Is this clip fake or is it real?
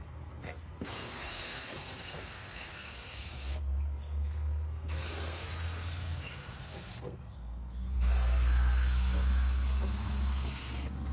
fake